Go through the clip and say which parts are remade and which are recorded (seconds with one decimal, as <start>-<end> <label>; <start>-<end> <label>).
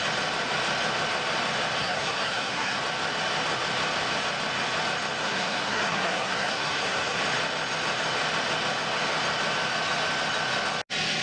0.0-1.8 recorded; 1.8-2.8 remade; 2.8-5.2 recorded; 5.2-7.2 remade; 7.2-11.2 recorded